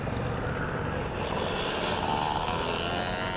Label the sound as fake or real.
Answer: real